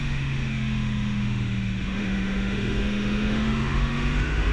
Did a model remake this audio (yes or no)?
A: yes